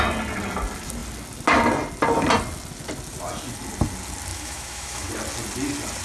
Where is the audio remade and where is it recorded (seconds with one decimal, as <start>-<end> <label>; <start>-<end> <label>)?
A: 0.0-4.3 recorded; 4.3-5.1 remade; 5.1-6.0 recorded